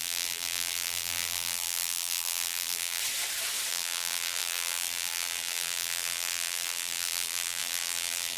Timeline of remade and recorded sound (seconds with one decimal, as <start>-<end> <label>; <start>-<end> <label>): 0.0-3.0 remade; 3.0-3.7 recorded; 3.7-8.4 remade